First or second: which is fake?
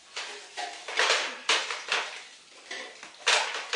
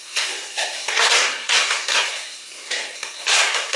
second